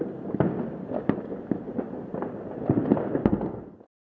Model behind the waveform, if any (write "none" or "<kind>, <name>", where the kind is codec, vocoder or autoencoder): none